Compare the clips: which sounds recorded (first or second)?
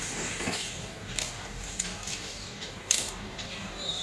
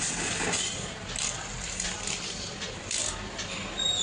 second